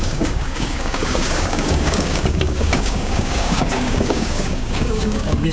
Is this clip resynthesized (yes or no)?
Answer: yes